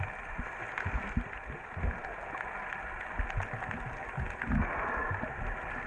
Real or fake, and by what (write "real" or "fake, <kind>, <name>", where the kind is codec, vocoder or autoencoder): real